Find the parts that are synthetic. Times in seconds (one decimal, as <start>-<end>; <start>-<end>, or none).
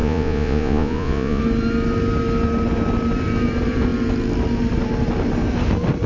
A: 0.0-1.4